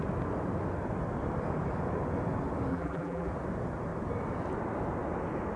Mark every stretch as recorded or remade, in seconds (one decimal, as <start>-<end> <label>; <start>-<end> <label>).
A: 0.0-2.7 recorded; 2.7-3.3 remade; 3.3-5.6 recorded